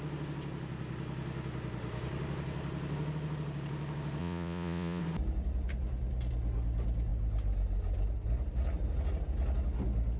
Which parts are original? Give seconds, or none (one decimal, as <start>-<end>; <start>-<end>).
0.0-4.2; 5.0-10.2